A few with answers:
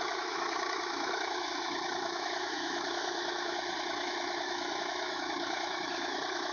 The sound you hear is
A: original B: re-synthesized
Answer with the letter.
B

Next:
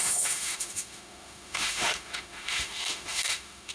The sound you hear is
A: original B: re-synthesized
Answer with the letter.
B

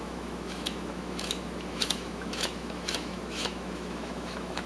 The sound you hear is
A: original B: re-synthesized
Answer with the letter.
B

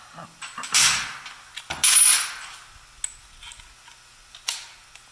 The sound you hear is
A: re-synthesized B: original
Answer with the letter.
B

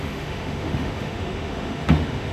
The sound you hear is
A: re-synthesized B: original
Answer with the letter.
A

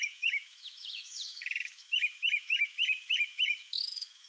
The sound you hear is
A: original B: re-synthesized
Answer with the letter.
B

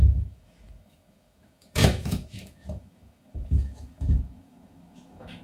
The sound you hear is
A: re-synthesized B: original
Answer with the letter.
A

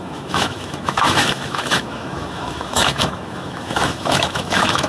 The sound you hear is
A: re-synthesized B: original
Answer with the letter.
A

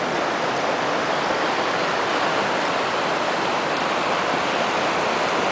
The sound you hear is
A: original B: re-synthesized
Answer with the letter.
A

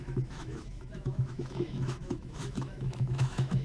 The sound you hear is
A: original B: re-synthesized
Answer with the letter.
B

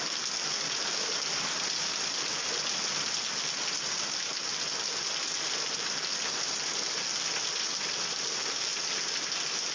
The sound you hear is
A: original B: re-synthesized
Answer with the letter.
A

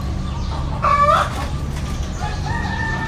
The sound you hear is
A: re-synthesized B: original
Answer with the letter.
B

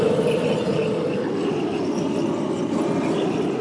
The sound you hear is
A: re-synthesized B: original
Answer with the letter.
B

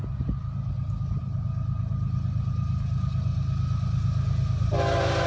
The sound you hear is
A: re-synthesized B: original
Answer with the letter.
B